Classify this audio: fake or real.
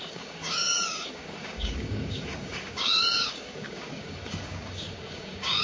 fake